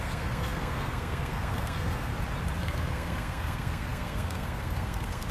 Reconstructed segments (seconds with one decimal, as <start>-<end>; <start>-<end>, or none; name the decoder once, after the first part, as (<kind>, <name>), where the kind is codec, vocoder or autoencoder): 0.0-2.1 (codec, SNAC); 2.6-5.3